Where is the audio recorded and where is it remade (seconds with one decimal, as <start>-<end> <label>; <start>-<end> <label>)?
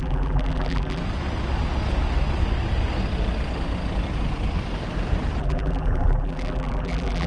0.0-1.0 remade; 1.0-5.4 recorded; 5.4-7.3 remade